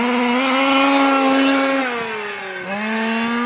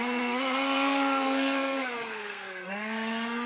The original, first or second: first